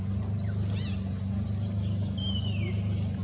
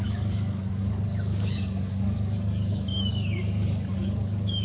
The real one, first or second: first